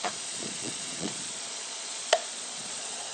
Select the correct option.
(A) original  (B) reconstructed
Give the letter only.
B